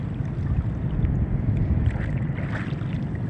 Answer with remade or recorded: recorded